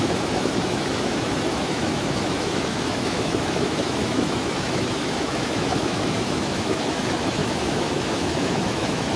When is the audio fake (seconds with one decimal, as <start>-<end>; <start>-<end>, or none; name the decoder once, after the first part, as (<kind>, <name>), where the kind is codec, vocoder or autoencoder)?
0.0-9.2 (autoencoder, DAC-VAE)